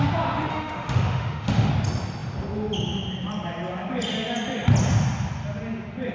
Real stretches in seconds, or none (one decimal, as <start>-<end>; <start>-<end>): 0.0-0.5; 1.7-6.1